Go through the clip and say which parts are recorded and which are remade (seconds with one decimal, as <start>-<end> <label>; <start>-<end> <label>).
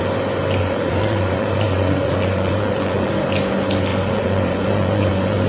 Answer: 0.0-0.6 recorded; 0.6-3.1 remade; 3.1-3.9 recorded; 3.9-5.5 remade